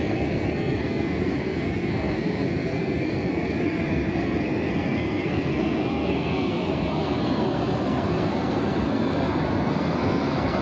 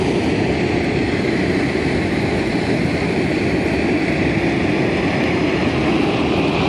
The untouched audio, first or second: second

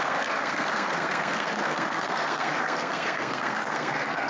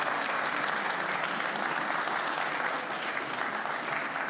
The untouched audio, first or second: second